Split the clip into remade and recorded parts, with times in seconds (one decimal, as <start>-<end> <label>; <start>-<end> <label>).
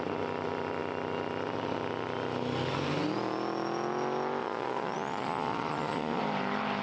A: 0.0-4.4 recorded; 4.4-6.2 remade; 6.2-6.8 recorded